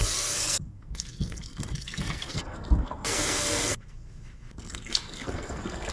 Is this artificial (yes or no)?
yes